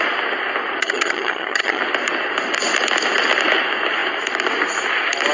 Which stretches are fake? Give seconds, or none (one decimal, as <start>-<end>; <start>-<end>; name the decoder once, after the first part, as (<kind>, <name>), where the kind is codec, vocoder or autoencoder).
0.8-1.8 (vocoder, HiFi-GAN)